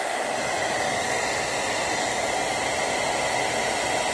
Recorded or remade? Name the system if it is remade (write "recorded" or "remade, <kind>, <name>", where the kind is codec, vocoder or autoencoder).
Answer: recorded